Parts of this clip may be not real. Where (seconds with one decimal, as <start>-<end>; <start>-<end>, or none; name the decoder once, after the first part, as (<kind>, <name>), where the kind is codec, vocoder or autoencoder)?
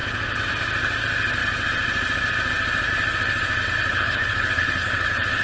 3.9-5.4 (codec, HILCodec)